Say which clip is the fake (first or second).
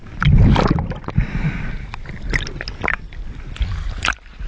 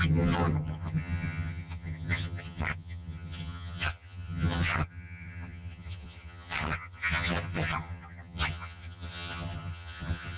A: second